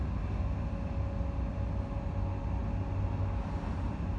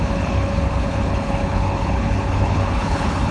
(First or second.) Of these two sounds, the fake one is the second